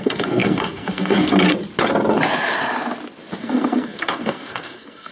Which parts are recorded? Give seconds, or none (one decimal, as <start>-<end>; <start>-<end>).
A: 1.3-3.4